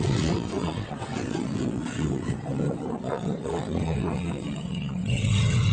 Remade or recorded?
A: remade